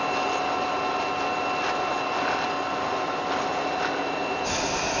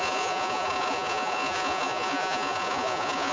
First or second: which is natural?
first